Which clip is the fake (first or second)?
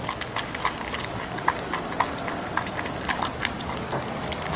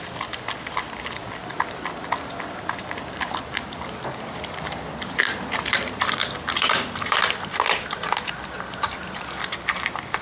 second